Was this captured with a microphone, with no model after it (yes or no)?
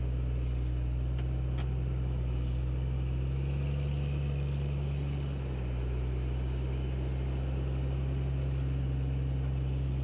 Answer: yes